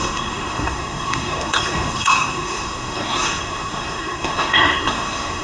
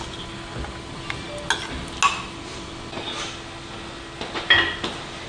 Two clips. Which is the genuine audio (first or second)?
second